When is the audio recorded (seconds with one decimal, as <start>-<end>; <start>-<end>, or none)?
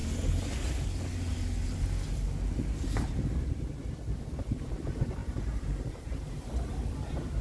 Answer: 0.0-5.2; 6.4-7.4